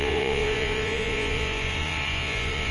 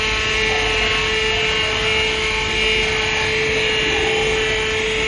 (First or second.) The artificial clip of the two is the first